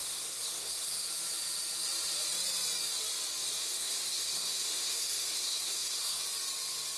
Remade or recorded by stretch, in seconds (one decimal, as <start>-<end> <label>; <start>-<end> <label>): 0.0-1.1 remade; 1.1-3.6 recorded; 3.6-6.2 remade; 6.2-7.0 recorded